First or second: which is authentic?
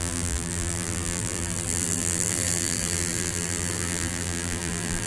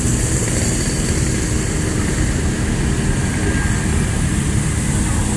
second